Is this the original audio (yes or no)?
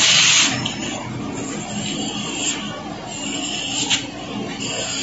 yes